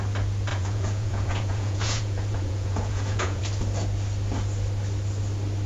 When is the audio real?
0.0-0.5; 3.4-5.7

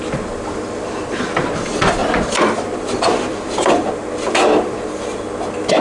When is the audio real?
0.0-2.0; 4.0-5.8

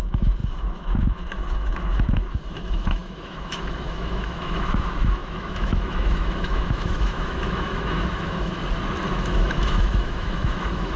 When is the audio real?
8.6-9.1

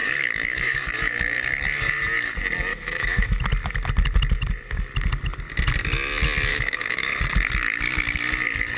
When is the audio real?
0.9-2.7; 3.4-6.5; 7.2-8.8

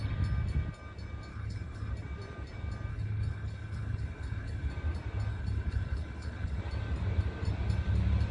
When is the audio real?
0.0-1.3; 1.9-2.9; 4.7-5.3; 6.6-8.3

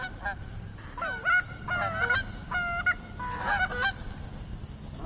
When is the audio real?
0.0-0.7; 1.6-5.1

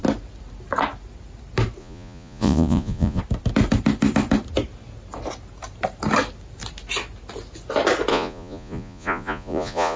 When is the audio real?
0.0-1.8; 3.2-8.1